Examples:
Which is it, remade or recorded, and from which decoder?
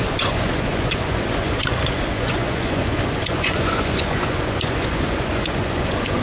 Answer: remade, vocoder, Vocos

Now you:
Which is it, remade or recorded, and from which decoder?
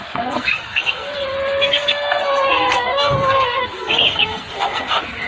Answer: remade, codec, SNAC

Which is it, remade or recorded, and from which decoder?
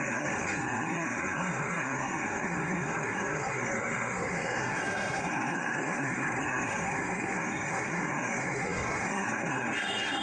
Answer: remade, codec, SNAC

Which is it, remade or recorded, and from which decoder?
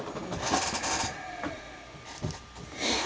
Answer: recorded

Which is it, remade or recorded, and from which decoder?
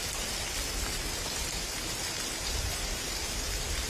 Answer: recorded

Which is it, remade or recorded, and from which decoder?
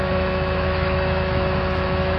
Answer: remade, autoencoder, DAC-VAE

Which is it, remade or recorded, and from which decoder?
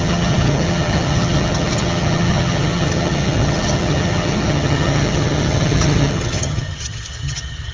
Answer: remade, vocoder, HiFi-GAN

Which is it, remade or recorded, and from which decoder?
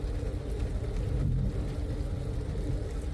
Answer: recorded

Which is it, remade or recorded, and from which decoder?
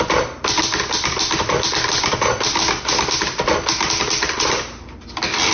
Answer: recorded